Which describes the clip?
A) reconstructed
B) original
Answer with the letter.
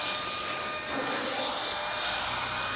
B